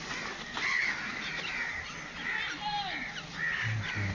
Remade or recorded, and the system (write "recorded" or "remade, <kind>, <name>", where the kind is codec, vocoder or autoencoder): recorded